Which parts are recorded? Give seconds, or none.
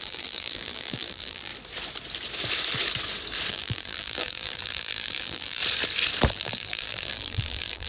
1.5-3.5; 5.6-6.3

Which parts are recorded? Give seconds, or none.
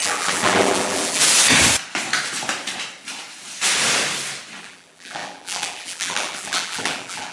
1.2-4.6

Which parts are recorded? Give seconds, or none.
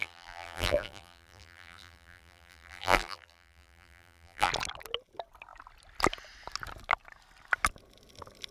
4.5-8.5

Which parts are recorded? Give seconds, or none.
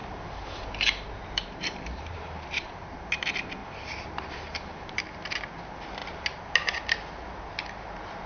2.8-3.6; 5.0-8.3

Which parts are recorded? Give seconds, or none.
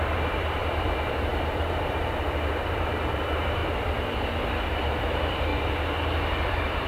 3.6-4.4; 5.5-6.5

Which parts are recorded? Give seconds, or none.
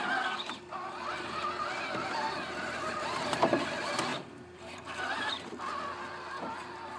0.0-4.1; 6.5-7.0